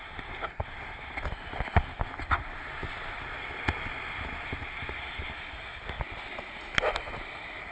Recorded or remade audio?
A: recorded